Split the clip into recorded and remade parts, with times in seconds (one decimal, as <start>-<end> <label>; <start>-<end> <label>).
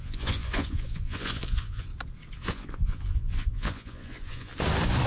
0.0-1.9 remade; 1.9-2.5 recorded; 2.5-4.5 remade; 4.5-5.1 recorded